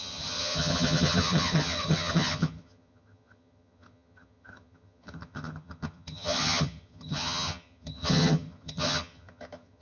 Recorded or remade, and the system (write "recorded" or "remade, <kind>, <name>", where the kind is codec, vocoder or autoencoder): remade, vocoder, HiFi-GAN